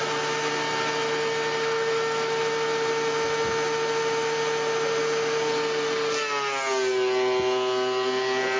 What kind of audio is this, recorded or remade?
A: recorded